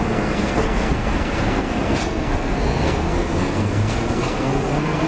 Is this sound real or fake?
fake